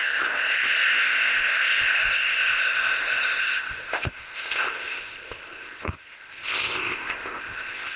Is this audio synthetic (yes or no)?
yes